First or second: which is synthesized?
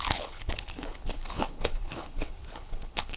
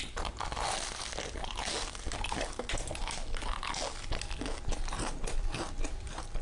first